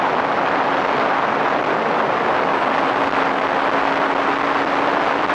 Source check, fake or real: real